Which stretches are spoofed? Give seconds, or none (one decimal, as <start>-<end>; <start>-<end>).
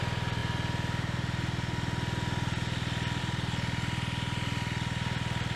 none